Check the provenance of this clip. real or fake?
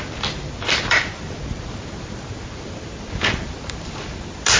real